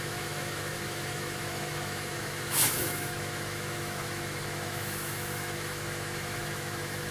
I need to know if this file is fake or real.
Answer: fake